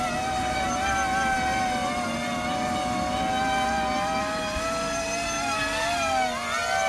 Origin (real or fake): real